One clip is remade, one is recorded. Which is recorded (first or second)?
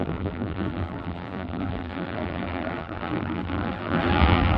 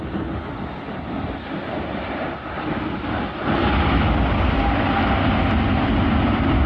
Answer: second